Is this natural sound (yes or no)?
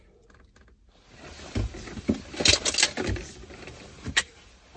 yes